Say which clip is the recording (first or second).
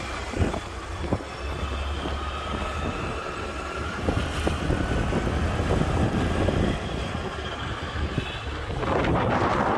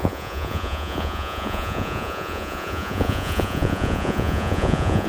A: first